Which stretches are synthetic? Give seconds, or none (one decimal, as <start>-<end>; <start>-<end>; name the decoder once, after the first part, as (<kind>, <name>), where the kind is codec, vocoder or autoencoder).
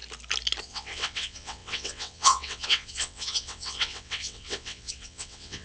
0.6-5.6 (vocoder, WaveNeXt)